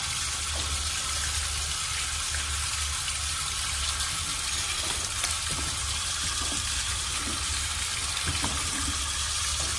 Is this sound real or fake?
real